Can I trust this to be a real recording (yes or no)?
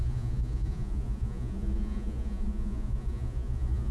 no